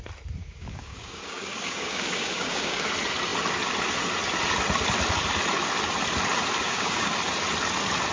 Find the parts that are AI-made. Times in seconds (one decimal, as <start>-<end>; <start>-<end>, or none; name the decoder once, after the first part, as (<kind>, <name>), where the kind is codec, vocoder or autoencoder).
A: 0.4-2.9 (codec, DAC); 6.6-7.1